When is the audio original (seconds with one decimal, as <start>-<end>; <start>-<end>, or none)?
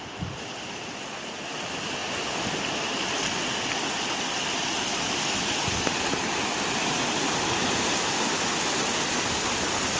0.0-10.0